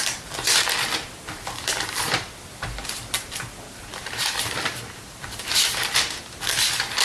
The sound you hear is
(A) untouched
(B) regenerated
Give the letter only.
B